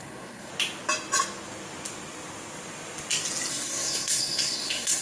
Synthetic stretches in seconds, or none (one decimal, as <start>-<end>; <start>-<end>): 0.0-0.5; 3.5-5.0